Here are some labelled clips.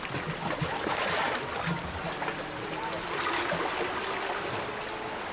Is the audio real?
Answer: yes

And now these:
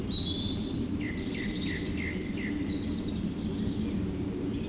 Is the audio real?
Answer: yes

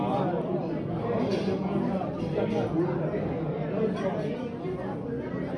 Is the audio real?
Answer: yes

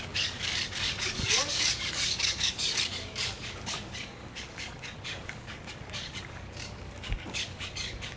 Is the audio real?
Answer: no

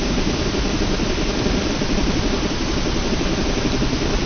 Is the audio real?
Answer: yes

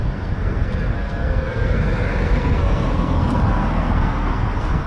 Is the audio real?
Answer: no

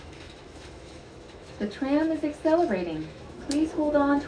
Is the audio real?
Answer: no